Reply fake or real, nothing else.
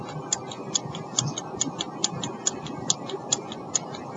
real